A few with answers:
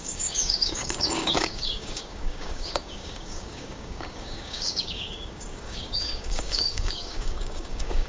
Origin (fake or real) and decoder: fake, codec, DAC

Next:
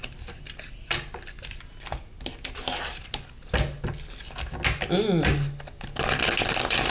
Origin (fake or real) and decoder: real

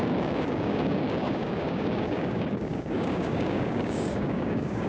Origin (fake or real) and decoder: fake, codec, DAC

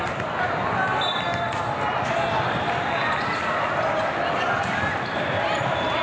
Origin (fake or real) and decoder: real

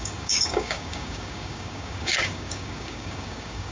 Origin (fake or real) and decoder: fake, codec, DAC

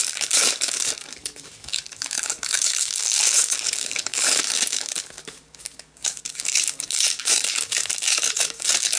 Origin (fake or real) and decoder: fake, codec, DAC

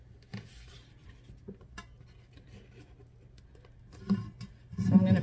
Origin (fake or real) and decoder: real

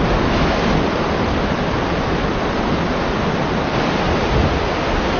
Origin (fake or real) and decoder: real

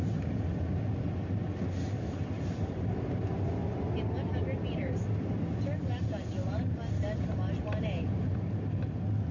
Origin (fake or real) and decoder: real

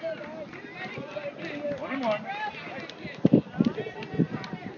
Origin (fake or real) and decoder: real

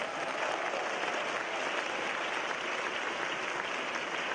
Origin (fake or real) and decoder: real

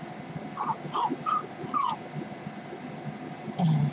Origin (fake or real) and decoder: real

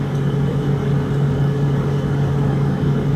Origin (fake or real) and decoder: fake, codec, DAC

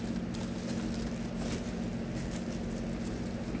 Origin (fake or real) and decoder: real